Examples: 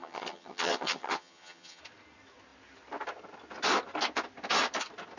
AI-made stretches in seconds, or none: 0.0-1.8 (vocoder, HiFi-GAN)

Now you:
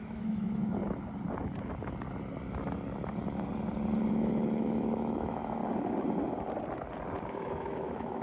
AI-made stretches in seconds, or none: 0.0-0.8 (autoencoder, DAC-VAE); 4.1-5.6; 7.3-8.2